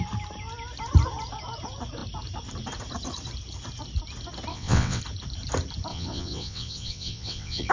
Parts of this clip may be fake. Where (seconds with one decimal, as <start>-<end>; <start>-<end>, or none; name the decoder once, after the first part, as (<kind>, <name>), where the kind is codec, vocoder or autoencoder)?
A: 4.5-5.0 (vocoder, WaveNeXt); 5.9-7.7